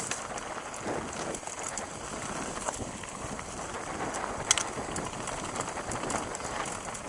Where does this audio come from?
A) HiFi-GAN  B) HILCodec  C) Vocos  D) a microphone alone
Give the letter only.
D